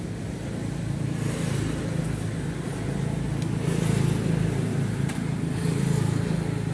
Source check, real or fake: real